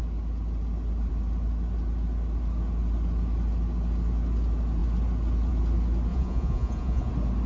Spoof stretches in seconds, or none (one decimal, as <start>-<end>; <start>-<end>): 6.1-7.1